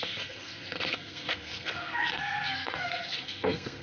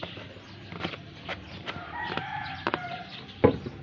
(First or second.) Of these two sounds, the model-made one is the first